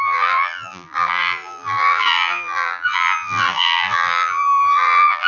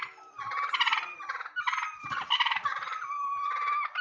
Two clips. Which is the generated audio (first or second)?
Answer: first